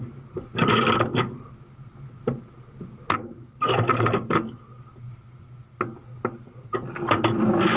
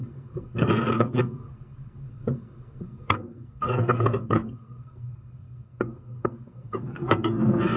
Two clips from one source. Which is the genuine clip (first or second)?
first